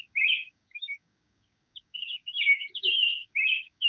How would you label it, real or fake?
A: fake